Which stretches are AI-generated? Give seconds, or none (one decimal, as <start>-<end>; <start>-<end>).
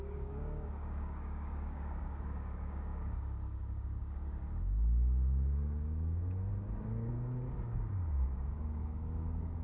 0.0-6.5; 7.1-9.6